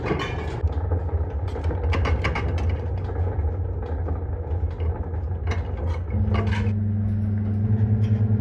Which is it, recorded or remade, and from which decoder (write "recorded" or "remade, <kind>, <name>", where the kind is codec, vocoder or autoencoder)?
recorded